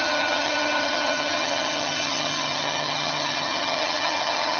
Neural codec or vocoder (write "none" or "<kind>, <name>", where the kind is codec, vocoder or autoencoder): vocoder, HiFi-GAN